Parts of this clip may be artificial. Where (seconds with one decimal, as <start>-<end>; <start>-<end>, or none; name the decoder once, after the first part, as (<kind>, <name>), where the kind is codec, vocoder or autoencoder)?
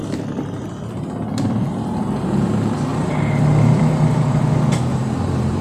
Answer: 2.9-4.4 (vocoder, BigVGAN v2); 4.9-5.6